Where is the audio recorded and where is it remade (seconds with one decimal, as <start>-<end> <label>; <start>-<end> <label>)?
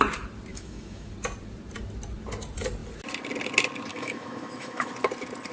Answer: 0.0-0.5 recorded; 0.5-1.1 remade; 1.1-3.9 recorded; 3.9-4.9 remade; 4.9-5.5 recorded